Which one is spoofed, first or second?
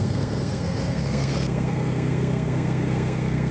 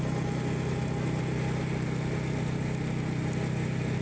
first